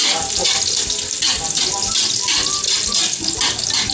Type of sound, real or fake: real